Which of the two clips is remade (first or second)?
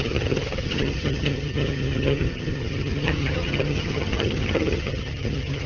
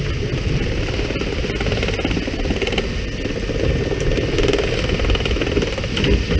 first